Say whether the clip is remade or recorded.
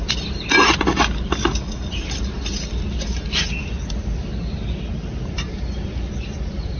recorded